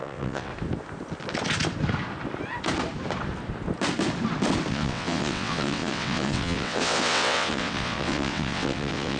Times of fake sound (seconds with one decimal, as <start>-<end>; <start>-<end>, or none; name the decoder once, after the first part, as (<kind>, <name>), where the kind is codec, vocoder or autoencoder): 0.0-0.5 (vocoder, WaveNeXt); 4.7-9.2